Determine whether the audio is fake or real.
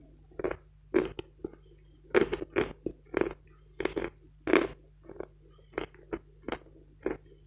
real